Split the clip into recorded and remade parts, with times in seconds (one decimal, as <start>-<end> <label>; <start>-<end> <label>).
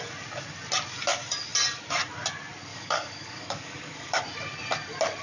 0.0-2.7 recorded; 2.7-4.2 remade; 4.2-5.2 recorded